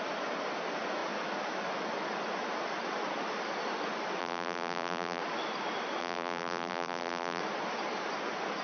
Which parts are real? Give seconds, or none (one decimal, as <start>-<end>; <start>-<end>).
0.0-4.2; 5.2-6.0; 7.4-8.6